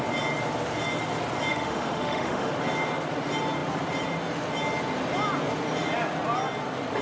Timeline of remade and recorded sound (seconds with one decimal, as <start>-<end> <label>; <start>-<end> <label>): 0.0-1.5 recorded; 1.5-2.5 remade; 2.5-7.0 recorded